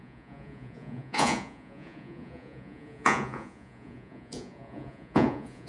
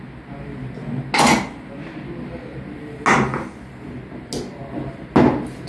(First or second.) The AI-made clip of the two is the first